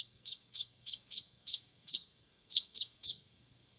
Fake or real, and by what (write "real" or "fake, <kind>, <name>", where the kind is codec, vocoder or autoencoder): fake, codec, SNAC